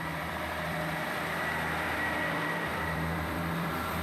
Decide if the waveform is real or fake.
fake